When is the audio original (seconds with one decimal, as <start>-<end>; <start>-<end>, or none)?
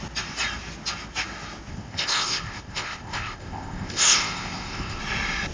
0.0-1.7; 5.0-5.5